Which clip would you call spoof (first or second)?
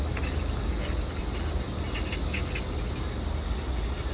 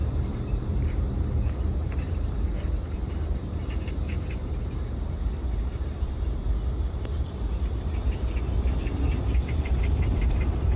second